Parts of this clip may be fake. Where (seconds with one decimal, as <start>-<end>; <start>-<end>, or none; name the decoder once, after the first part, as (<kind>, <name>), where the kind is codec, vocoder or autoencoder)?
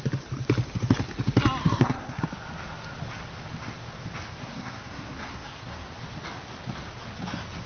1.6-2.2 (codec, SNAC); 4.4-5.9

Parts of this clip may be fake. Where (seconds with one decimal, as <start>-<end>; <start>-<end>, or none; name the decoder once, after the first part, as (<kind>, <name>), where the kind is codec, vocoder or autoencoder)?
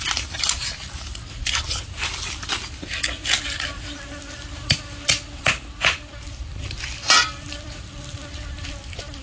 none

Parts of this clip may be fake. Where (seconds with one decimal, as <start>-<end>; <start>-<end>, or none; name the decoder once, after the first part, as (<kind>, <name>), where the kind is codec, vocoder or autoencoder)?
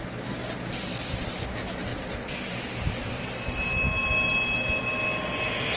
0.0-0.4 (vocoder, BigVGAN v2); 1.1-1.9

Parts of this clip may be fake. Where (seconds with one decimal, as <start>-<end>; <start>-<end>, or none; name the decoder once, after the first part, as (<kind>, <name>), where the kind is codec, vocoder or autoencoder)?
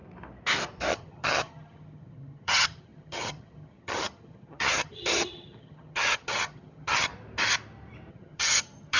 0.9-7.1 (vocoder, HiFi-GAN); 8.1-9.0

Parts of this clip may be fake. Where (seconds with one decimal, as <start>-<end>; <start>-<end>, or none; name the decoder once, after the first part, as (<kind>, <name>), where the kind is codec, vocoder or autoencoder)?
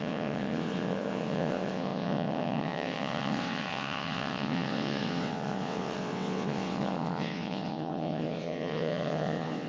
0.0-9.7 (vocoder, WaveNeXt)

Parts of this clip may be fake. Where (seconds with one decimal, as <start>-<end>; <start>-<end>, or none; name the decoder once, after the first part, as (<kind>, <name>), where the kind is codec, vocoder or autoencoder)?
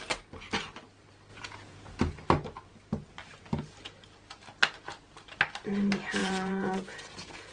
1.3-2.0 (vocoder, Vocos); 6.2-7.5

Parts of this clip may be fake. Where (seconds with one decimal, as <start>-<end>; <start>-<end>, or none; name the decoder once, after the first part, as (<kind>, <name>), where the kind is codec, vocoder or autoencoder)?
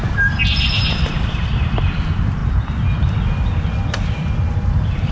none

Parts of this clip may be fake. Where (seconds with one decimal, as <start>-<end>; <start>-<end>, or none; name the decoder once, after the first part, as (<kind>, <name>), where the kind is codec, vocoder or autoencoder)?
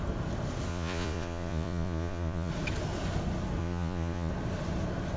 0.7-2.5 (vocoder, Vocos); 3.6-4.3